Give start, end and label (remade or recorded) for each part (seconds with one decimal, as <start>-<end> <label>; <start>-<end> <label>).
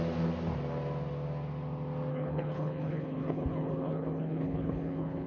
0.0-2.1 recorded; 2.1-5.3 remade